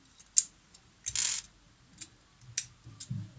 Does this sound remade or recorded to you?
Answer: recorded